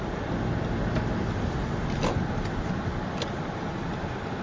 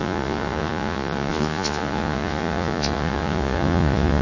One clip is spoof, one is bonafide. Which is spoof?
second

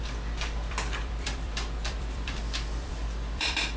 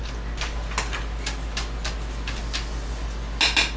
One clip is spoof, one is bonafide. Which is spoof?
first